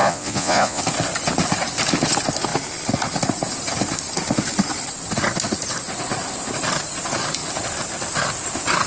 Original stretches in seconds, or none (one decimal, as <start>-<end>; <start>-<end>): 0.8-8.9